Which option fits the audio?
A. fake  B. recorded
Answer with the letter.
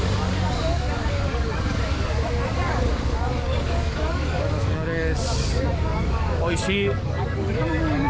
A